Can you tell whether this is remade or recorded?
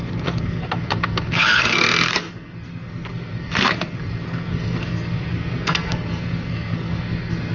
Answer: remade